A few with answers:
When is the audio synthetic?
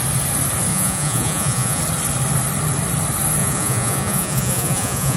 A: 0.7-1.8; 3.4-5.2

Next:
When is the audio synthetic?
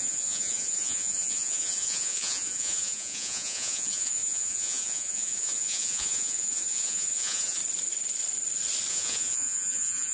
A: 0.0-7.6; 8.9-10.1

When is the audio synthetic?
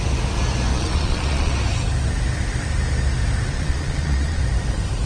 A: 0.7-1.6; 3.5-4.4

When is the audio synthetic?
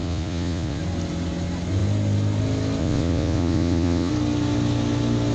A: 0.0-0.8; 2.8-4.1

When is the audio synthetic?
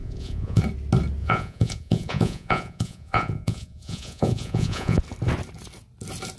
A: 0.0-0.6; 1.2-5.0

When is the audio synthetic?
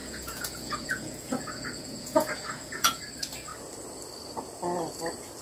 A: 0.0-3.0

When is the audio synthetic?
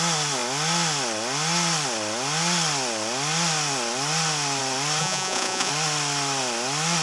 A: 5.0-5.7